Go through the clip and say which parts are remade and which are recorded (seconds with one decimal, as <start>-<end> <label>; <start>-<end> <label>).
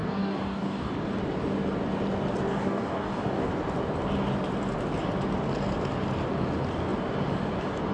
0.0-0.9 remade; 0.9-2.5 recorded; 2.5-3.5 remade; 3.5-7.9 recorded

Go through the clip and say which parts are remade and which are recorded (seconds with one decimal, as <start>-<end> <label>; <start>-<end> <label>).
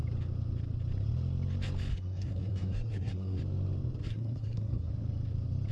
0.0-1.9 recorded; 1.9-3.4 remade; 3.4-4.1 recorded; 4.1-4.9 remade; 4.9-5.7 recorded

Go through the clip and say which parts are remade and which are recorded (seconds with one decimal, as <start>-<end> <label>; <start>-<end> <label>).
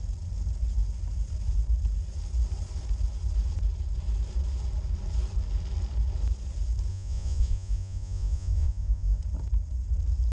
0.0-6.9 recorded; 6.9-9.2 remade; 9.2-10.3 recorded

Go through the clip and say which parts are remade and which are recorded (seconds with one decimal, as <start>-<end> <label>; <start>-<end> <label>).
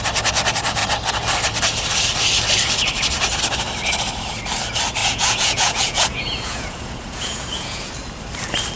0.0-5.0 recorded; 5.0-7.9 remade; 7.9-8.8 recorded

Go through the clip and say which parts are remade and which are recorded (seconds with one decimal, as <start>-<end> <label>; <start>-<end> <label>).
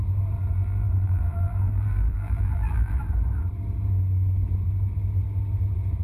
0.0-0.5 recorded; 0.5-3.0 remade; 3.0-6.0 recorded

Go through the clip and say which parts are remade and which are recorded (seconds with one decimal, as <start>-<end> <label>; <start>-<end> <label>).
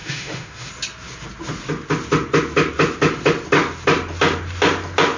0.0-0.7 remade; 0.7-5.2 recorded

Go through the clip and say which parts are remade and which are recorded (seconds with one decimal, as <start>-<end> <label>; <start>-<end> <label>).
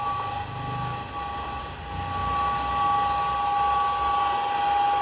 0.0-5.0 recorded